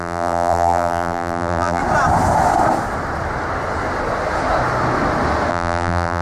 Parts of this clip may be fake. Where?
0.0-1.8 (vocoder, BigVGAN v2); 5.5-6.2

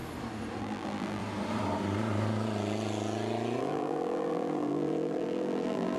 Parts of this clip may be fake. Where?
0.6-1.2 (vocoder, BigVGAN v2); 3.6-6.0

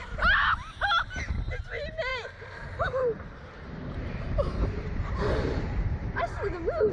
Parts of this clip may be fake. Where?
2.1-6.2 (vocoder, BigVGAN v2)

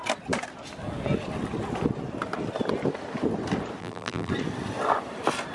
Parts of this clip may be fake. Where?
3.8-4.3 (vocoder, BigVGAN v2)

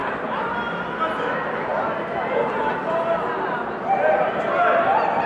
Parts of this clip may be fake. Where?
0.0-1.2 (vocoder, BigVGAN v2)

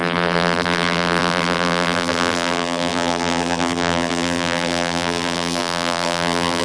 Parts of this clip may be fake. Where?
0.0-6.6 (vocoder, BigVGAN v2)